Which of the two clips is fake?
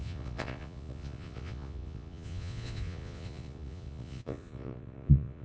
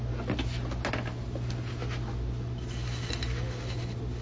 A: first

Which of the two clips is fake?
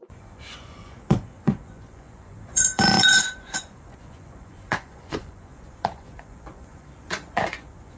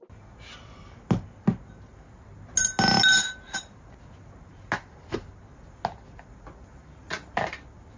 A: first